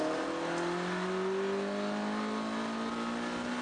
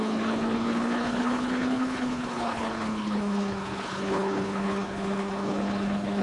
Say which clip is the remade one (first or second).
second